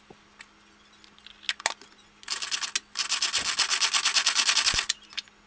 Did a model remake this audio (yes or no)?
no